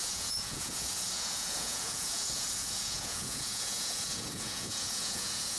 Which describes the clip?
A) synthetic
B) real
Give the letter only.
A